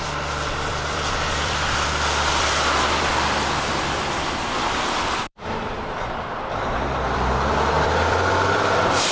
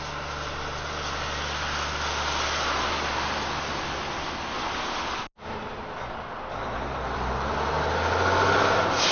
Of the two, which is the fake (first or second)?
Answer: first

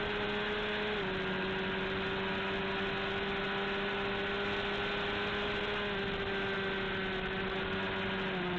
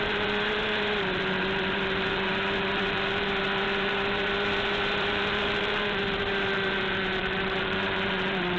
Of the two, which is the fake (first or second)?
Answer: second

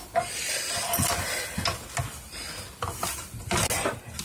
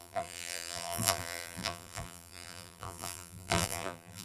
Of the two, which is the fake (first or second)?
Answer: second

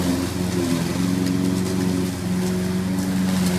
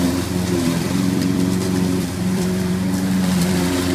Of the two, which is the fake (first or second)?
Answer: second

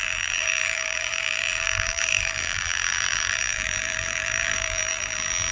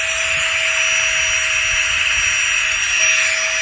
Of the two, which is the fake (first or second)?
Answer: first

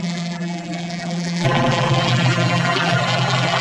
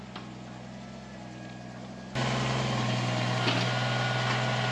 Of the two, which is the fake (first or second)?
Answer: first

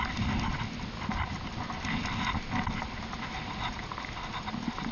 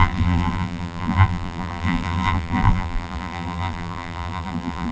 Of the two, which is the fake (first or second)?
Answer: second